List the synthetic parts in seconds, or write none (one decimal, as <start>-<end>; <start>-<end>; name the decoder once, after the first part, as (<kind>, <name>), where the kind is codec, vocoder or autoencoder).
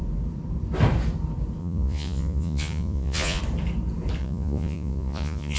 1.6-3.4 (vocoder, Vocos); 4.2-5.6